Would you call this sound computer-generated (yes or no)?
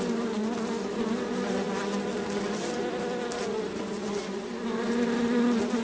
no